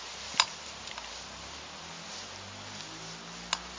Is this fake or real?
real